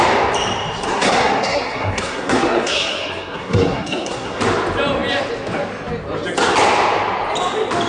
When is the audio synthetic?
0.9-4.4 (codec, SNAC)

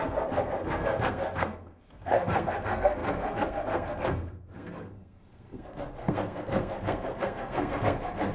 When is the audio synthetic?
0.0-8.3 (codec, SNAC)

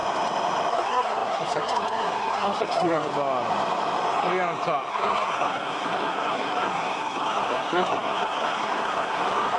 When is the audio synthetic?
0.7-3.1 (codec, SNAC); 4.9-9.6

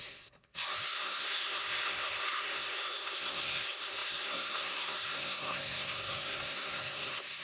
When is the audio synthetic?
0.0-7.4 (codec, SNAC)